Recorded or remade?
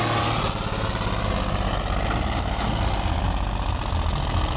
recorded